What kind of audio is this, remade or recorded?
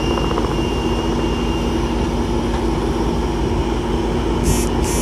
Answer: recorded